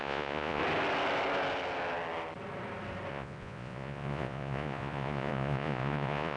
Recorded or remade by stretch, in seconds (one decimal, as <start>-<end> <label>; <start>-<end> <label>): 0.0-0.6 remade; 0.6-3.1 recorded; 3.1-6.4 remade

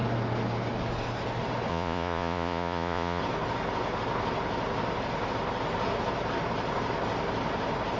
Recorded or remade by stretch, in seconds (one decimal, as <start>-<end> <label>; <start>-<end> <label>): 0.0-1.7 recorded; 1.7-3.2 remade; 3.2-8.0 recorded

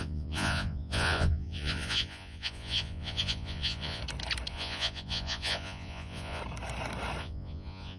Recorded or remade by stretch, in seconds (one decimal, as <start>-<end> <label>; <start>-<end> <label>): 0.0-4.0 remade; 4.0-4.5 recorded; 4.5-6.4 remade; 6.4-7.2 recorded; 7.2-8.0 remade

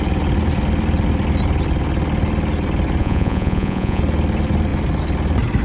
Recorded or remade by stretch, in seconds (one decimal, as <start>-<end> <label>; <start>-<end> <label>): 0.0-3.0 recorded; 3.0-4.0 remade; 4.0-5.6 recorded

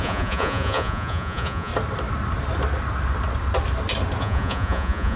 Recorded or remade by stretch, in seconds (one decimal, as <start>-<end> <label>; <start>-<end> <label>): 0.0-1.7 remade; 1.7-4.2 recorded; 4.2-5.2 remade